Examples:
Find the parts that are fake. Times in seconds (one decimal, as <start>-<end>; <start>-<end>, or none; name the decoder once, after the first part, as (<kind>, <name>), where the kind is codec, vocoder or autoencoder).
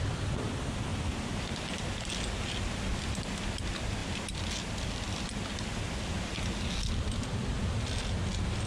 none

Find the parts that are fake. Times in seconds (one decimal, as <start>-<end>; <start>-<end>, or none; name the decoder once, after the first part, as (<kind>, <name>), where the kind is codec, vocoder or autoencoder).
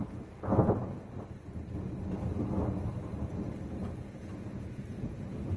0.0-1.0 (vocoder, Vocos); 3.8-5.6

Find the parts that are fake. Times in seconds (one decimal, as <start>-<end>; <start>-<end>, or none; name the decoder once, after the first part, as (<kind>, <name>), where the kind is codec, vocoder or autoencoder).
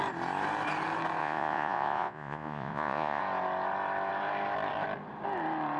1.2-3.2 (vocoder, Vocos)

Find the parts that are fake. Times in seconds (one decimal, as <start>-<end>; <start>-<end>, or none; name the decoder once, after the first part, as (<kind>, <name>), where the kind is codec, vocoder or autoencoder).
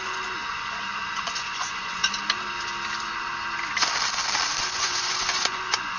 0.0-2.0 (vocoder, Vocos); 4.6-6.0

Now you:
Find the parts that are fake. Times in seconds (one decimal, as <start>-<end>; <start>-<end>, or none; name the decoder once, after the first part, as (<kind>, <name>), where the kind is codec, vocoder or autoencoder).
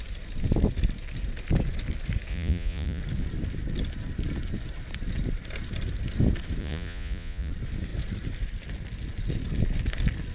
2.3-3.0 (vocoder, Vocos); 6.6-7.5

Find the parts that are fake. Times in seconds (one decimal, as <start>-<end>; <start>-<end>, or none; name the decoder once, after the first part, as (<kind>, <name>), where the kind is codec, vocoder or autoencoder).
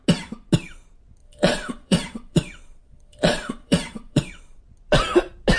1.2-4.6 (vocoder, Vocos)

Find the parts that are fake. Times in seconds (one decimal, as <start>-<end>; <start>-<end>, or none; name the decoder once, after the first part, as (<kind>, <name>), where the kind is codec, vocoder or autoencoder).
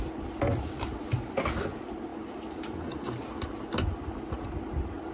none